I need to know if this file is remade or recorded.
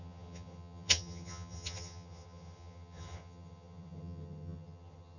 remade